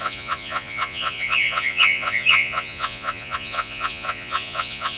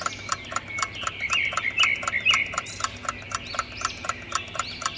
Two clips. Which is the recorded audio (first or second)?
second